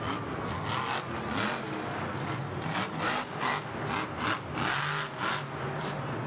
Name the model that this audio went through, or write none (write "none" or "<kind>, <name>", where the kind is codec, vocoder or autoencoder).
none